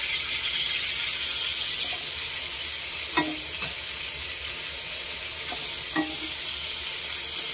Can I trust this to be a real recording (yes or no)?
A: yes